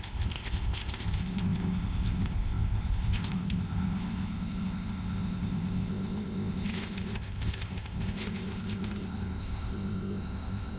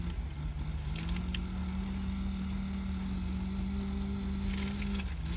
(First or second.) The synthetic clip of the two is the first